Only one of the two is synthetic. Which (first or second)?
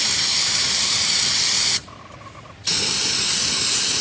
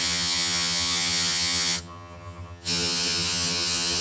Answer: second